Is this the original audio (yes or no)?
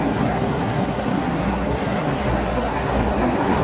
no